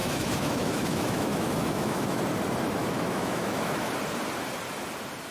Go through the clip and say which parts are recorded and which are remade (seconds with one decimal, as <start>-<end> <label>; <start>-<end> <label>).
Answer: 0.0-2.2 remade; 2.2-2.8 recorded; 2.8-3.9 remade; 3.9-5.3 recorded